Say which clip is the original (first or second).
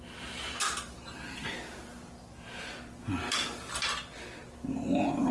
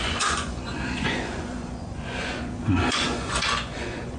first